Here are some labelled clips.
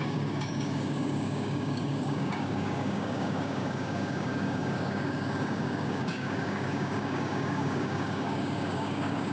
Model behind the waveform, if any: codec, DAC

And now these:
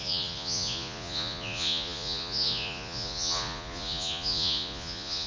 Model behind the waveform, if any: vocoder, Vocos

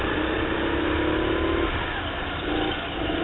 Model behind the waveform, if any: none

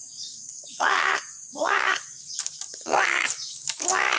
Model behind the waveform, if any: codec, DAC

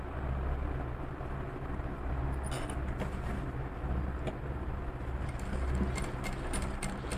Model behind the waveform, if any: none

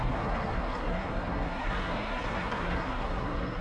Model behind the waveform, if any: codec, SNAC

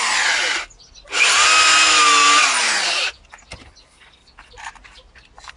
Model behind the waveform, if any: none